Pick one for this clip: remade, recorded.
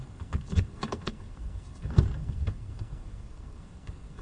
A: remade